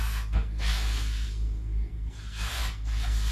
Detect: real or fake fake